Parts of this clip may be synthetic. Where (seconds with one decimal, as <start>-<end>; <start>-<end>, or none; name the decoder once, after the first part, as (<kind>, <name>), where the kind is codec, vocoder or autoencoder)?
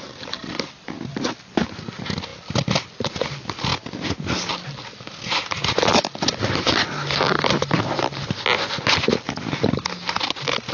none